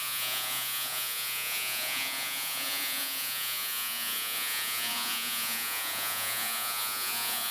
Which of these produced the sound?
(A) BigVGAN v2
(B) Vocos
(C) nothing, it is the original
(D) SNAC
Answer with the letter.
B